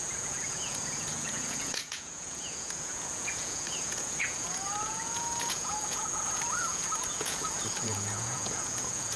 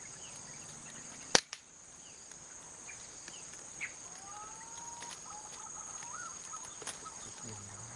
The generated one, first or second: first